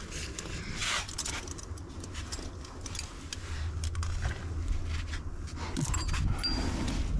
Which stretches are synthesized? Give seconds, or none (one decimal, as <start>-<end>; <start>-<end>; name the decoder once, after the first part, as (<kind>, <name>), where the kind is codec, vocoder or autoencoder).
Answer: none